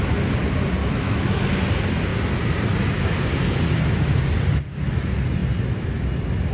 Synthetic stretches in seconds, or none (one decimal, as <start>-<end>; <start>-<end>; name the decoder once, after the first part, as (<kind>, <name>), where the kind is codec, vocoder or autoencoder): 0.8-1.4 (autoencoder, DAC-VAE)

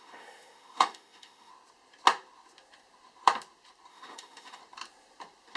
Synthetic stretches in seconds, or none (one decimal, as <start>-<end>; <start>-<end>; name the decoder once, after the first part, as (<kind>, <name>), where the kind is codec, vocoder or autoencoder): 0.0-1.5 (autoencoder, DAC-VAE); 3.9-4.6